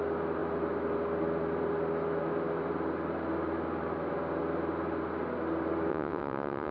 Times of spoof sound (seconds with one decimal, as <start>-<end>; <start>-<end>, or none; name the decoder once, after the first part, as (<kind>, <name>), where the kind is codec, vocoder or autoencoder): 5.9-6.7 (vocoder, WaveNeXt)